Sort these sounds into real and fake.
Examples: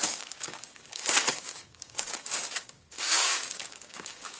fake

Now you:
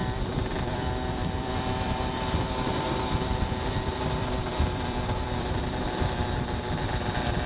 fake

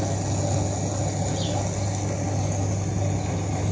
real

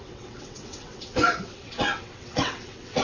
fake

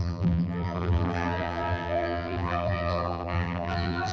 fake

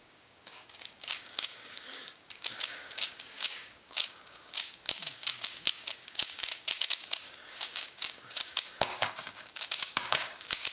fake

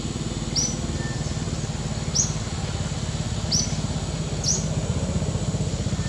real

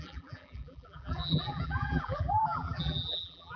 fake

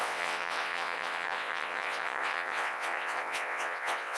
fake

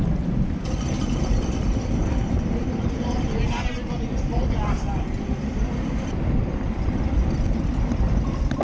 fake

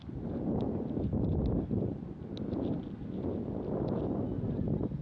real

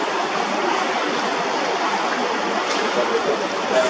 real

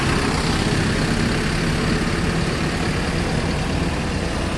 real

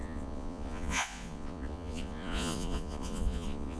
fake